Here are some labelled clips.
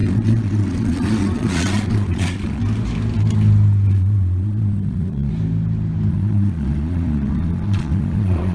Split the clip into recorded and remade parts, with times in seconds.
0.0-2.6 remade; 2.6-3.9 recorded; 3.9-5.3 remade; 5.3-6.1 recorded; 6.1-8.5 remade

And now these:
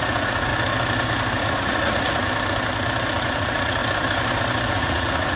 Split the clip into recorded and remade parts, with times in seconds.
0.0-0.5 remade; 0.5-1.4 recorded; 1.4-2.2 remade; 2.2-3.2 recorded; 3.2-3.8 remade; 3.8-4.7 recorded; 4.7-5.4 remade